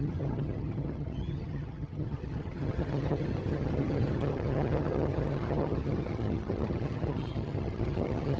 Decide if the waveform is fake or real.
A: fake